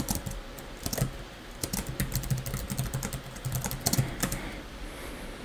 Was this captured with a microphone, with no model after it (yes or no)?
yes